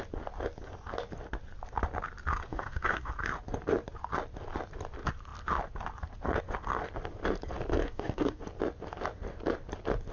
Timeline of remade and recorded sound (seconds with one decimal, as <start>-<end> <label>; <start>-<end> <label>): 0.0-2.5 recorded; 2.5-3.1 remade; 3.1-7.8 recorded; 7.8-8.4 remade; 8.4-10.1 recorded